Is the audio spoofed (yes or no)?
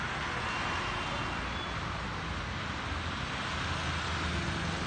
no